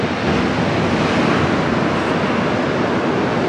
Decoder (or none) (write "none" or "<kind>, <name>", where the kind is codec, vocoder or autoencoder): none